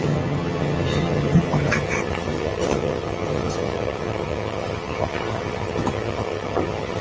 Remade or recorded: remade